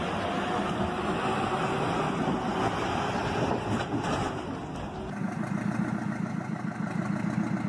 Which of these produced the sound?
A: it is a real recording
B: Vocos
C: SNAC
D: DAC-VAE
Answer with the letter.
A